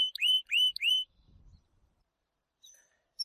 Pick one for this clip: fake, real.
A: fake